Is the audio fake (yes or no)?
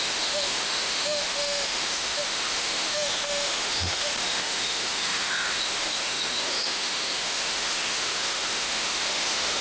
yes